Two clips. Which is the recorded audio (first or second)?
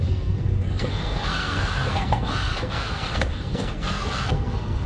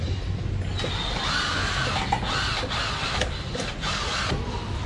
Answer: second